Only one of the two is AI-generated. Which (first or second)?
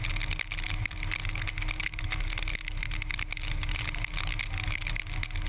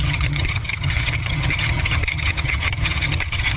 second